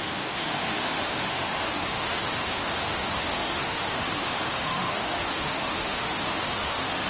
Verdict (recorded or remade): remade